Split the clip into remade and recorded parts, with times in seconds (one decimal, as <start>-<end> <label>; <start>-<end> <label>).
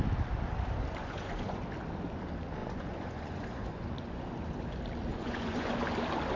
0.0-1.0 recorded; 1.0-1.6 remade; 1.6-2.6 recorded; 2.6-4.2 remade; 4.2-5.1 recorded; 5.1-5.7 remade; 5.7-6.4 recorded